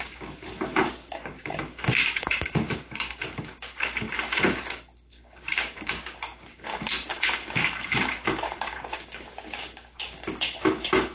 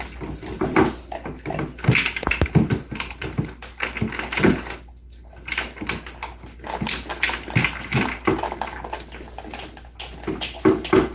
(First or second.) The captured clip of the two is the second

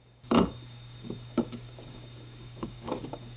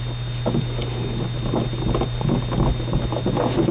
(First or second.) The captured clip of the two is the second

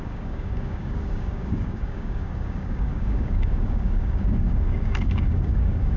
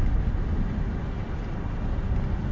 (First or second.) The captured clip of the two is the second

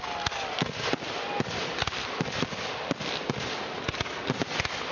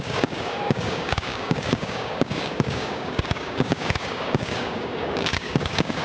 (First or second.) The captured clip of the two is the first